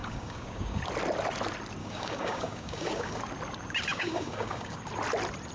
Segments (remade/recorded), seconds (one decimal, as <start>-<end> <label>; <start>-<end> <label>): 0.0-0.8 remade; 0.8-1.8 recorded; 1.8-3.2 remade; 3.2-3.9 recorded; 3.9-4.8 remade; 4.8-5.5 recorded

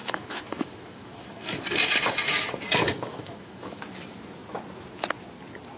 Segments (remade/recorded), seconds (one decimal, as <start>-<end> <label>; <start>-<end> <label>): 0.0-1.6 remade; 1.6-2.8 recorded; 2.8-3.8 remade; 3.8-5.8 recorded

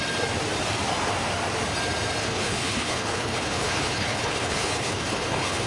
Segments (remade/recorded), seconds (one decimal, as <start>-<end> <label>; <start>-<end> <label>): 0.0-2.2 recorded; 2.2-5.7 remade

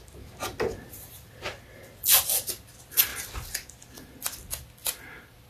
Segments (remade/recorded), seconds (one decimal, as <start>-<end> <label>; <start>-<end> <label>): 0.0-4.8 recorded; 4.8-5.5 remade

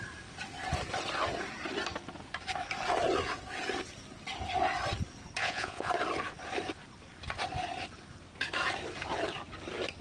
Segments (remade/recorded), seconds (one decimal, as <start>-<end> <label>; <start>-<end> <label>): 0.0-5.4 recorded; 5.4-5.9 remade; 5.9-10.0 recorded

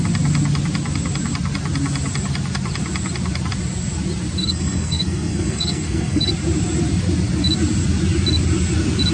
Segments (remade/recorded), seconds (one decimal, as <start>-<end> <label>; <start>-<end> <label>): 0.0-4.4 recorded; 4.4-6.3 remade; 6.3-9.1 recorded